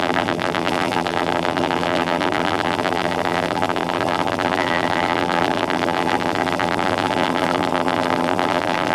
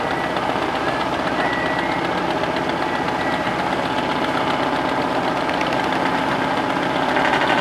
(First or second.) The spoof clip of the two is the first